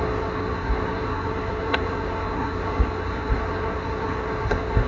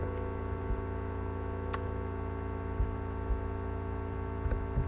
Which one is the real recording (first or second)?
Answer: second